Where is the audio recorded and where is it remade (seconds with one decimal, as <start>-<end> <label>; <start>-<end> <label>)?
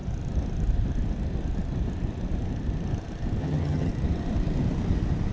0.0-3.4 recorded; 3.4-3.9 remade; 3.9-5.3 recorded